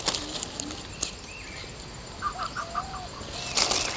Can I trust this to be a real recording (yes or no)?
yes